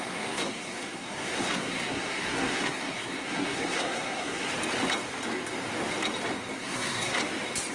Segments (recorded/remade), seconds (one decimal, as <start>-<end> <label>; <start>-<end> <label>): 0.0-4.5 remade; 4.5-6.6 recorded; 6.6-7.2 remade; 7.2-7.7 recorded